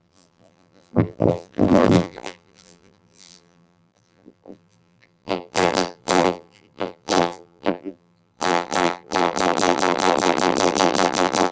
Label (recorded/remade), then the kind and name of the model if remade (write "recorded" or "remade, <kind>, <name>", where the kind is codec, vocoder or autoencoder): remade, vocoder, BigVGAN v2